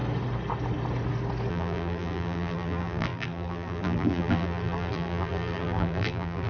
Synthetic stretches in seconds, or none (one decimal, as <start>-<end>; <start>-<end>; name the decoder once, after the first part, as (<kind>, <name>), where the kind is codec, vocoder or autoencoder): 1.5-6.5 (vocoder, BigVGAN v2)